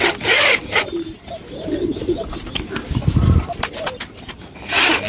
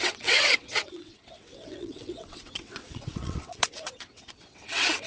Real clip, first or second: first